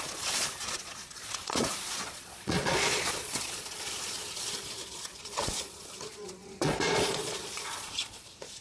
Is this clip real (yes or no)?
no